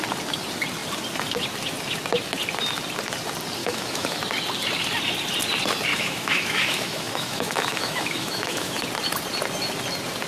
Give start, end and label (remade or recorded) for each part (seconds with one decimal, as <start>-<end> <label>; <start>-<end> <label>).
0.0-3.6 recorded; 3.6-4.2 remade; 4.2-5.9 recorded; 5.9-8.8 remade; 8.8-10.3 recorded